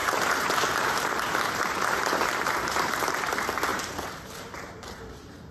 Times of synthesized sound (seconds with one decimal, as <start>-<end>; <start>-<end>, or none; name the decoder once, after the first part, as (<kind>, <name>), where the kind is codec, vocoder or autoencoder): 0.0-3.3 (vocoder, BigVGAN v2); 3.7-5.5